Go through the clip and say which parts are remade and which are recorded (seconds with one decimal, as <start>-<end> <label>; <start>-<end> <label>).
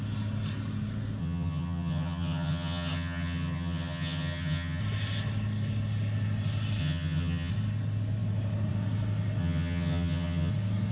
0.0-1.2 recorded; 1.2-4.8 remade; 4.8-6.8 recorded; 6.8-7.5 remade; 7.5-9.4 recorded; 9.4-10.5 remade; 10.5-10.9 recorded